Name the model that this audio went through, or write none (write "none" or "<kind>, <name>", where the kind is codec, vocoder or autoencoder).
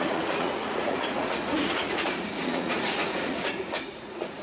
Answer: vocoder, Vocos